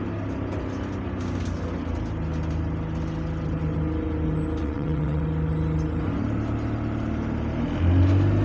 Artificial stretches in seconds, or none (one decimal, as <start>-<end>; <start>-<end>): 4.6-5.2